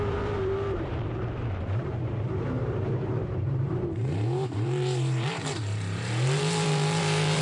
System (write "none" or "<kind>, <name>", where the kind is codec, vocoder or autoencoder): vocoder, BigVGAN v2